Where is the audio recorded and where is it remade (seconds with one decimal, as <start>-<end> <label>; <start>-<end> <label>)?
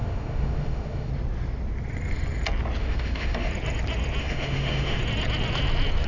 0.0-1.1 remade; 1.1-2.8 recorded; 2.8-3.5 remade; 3.5-4.2 recorded; 4.2-5.0 remade; 5.0-6.1 recorded